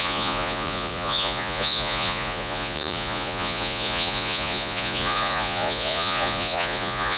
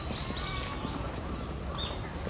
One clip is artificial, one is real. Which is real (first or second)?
second